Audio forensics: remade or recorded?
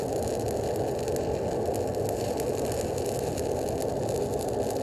recorded